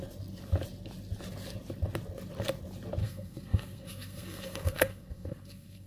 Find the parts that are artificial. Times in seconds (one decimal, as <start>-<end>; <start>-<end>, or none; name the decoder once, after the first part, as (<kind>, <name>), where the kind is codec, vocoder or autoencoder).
3.0-5.9 (codec, SNAC)